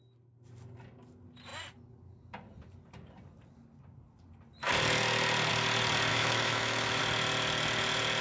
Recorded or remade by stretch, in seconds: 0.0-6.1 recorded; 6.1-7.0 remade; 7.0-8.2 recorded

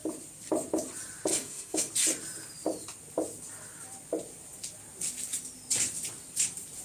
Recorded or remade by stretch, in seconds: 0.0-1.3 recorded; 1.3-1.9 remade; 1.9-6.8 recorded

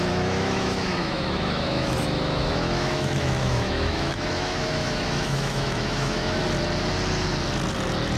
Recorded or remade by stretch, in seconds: 0.0-6.4 remade; 6.4-8.2 recorded

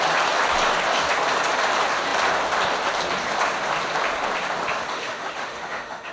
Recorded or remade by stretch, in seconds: 0.0-4.9 recorded; 4.9-6.1 remade

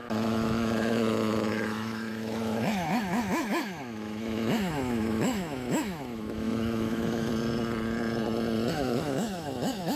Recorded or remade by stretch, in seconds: 0.0-7.3 remade; 7.3-8.7 recorded; 8.7-10.0 remade